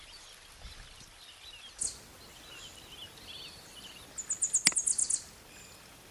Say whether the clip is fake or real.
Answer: real